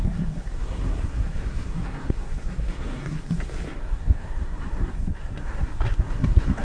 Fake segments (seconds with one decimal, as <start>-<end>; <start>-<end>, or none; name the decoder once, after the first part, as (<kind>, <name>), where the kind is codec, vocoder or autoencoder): 0.0-6.6 (codec, SNAC)